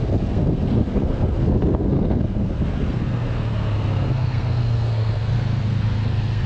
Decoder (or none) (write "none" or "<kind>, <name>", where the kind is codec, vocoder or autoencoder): codec, SNAC